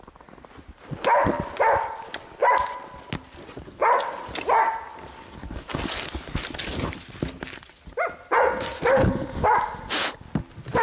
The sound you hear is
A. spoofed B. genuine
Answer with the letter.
B